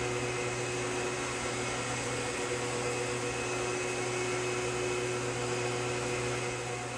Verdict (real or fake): real